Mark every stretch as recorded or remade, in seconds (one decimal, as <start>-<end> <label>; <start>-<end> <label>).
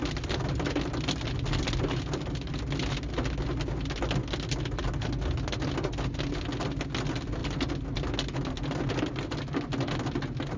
0.0-10.6 recorded